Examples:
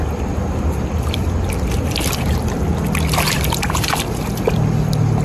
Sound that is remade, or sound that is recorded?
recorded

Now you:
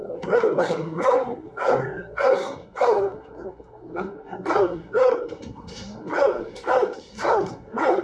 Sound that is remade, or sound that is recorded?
remade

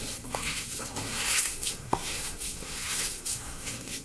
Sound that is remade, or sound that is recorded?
remade